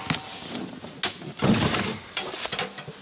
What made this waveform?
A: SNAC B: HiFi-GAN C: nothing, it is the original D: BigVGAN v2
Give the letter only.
C